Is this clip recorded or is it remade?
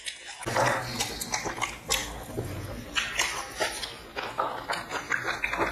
recorded